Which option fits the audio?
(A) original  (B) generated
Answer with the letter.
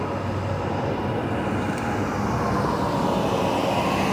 A